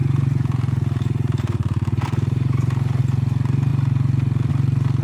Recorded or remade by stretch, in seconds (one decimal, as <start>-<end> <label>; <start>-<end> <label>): 0.0-3.0 remade; 3.0-5.0 recorded